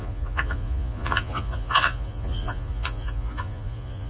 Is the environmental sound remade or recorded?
remade